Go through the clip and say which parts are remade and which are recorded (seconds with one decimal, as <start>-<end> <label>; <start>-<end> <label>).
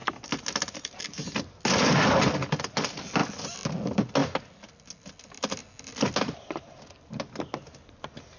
0.0-1.0 remade; 1.0-8.4 recorded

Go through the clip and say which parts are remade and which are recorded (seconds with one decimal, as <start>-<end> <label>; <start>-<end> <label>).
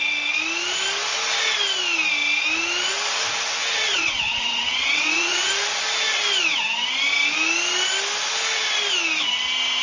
0.0-3.6 recorded; 3.6-5.5 remade; 5.5-9.8 recorded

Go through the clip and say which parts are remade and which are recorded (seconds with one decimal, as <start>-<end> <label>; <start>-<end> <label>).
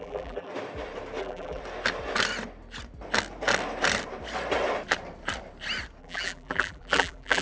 0.0-0.5 remade; 0.5-1.2 recorded; 1.2-1.6 remade; 1.6-6.0 recorded; 6.0-7.4 remade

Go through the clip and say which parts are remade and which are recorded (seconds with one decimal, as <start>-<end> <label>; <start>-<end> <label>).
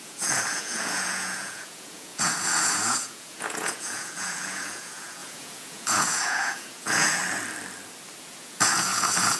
0.0-7.2 remade; 7.2-8.2 recorded; 8.2-9.4 remade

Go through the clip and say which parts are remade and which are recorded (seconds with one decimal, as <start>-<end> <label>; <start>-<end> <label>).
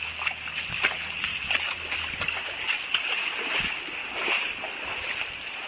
0.0-1.3 recorded; 1.3-2.1 remade; 2.1-5.7 recorded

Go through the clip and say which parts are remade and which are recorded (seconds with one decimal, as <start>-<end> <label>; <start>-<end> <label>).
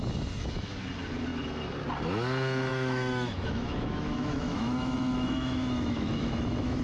0.0-2.7 recorded; 2.7-6.8 remade